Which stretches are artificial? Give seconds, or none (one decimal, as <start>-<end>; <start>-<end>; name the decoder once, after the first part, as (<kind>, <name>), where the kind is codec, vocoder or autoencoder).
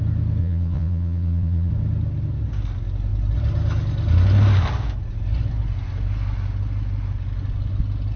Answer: 0.4-1.7 (vocoder, Vocos)